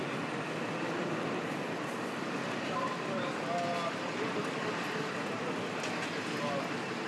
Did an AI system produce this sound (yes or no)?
no